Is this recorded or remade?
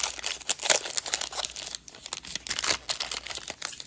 recorded